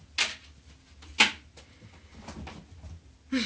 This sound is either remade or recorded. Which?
recorded